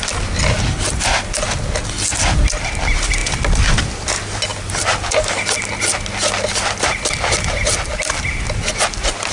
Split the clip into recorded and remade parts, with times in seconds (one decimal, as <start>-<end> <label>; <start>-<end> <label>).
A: 0.0-9.3 recorded